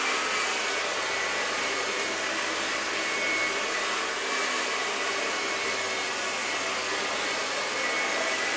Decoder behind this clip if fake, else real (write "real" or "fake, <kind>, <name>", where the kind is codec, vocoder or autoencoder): real